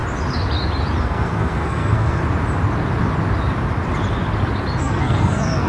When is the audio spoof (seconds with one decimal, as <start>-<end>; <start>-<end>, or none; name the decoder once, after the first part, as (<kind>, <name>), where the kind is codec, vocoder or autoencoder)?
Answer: 1.0-2.2 (codec, SNAC); 4.8-5.7